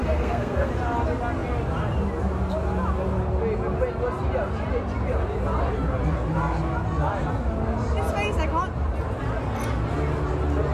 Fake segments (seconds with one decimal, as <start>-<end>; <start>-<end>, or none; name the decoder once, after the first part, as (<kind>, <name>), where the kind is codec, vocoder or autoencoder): 0.0-0.7 (codec, SNAC)